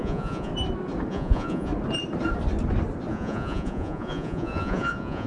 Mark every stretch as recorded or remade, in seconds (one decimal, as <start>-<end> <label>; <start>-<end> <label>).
0.0-0.5 remade; 0.5-1.1 recorded; 1.1-1.7 remade; 1.7-3.1 recorded; 3.1-5.3 remade